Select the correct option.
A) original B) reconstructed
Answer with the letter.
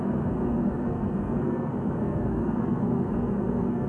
B